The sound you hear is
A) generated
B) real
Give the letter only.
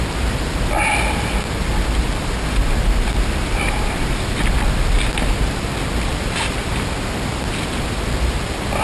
B